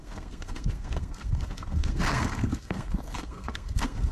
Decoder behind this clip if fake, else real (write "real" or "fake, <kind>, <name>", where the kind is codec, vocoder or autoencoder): fake, codec, SNAC